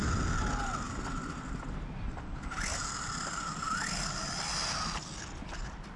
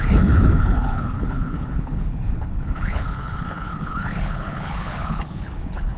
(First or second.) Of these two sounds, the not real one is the second